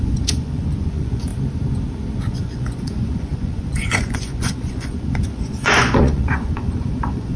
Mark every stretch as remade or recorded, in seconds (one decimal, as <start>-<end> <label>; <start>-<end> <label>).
0.0-1.3 remade; 1.3-2.2 recorded; 2.2-7.4 remade